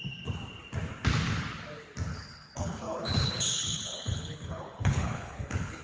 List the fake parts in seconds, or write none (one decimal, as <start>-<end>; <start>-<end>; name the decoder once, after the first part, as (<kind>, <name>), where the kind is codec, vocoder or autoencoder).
2.1-5.8 (codec, HILCodec)